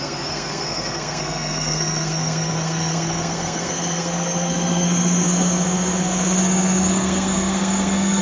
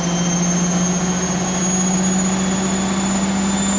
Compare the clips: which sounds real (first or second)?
second